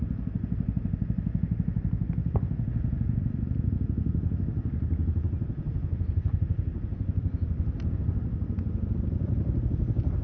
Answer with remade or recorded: recorded